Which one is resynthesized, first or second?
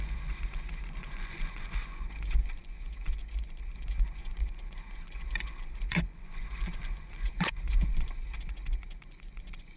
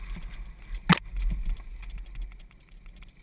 first